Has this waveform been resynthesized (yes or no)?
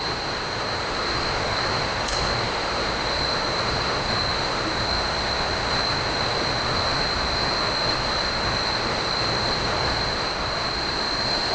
yes